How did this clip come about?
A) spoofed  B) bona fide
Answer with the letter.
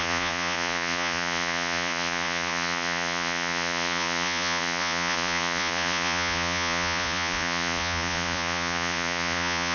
A